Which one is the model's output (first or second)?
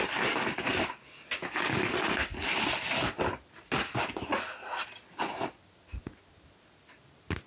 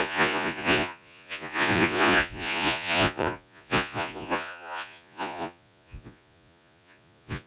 second